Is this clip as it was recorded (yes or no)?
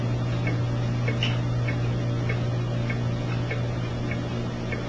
yes